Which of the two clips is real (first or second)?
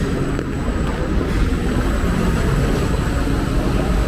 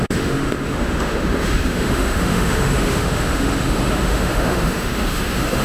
first